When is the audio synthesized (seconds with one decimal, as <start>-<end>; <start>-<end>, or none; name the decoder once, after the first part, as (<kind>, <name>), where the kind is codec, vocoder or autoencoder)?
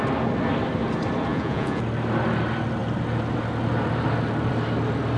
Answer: 1.3-1.8 (vocoder, Vocos)